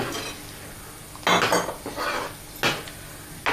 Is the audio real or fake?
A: real